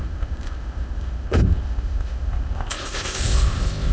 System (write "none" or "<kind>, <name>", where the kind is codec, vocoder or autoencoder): codec, ZipCodec